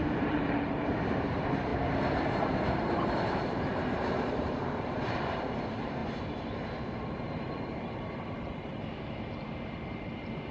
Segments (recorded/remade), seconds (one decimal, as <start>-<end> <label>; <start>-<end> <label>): 0.0-1.7 remade; 1.7-3.5 recorded; 3.5-10.5 remade